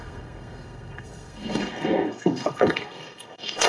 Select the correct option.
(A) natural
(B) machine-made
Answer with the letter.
B